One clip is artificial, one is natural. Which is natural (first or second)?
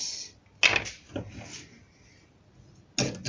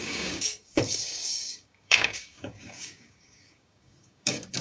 first